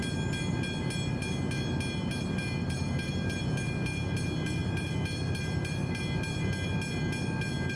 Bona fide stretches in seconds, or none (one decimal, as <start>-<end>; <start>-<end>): 0.0-2.6; 3.4-7.8